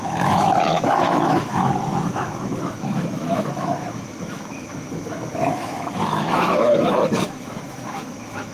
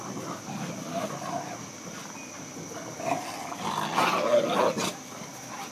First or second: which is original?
second